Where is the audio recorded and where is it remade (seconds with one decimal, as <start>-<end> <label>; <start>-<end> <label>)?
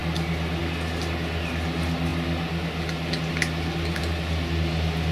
0.0-5.1 recorded